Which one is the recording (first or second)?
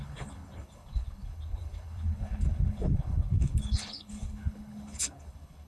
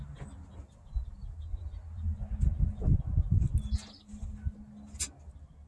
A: second